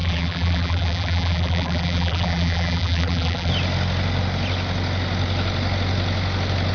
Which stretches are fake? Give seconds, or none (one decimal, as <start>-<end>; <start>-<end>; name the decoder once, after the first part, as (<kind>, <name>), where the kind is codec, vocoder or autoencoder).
0.0-3.5 (vocoder, BigVGAN v2)